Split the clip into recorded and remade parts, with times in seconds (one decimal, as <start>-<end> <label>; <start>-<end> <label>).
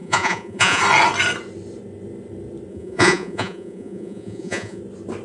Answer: 0.0-0.8 remade; 0.8-2.7 recorded; 2.7-4.8 remade; 4.8-5.2 recorded